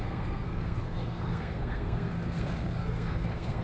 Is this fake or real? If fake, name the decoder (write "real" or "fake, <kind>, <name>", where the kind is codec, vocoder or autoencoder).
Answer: fake, codec, SNAC